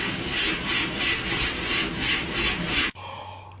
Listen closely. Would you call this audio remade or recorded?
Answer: recorded